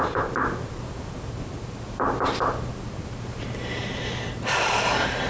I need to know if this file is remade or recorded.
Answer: remade